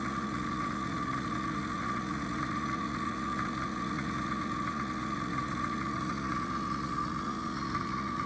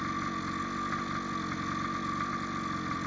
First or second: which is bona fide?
second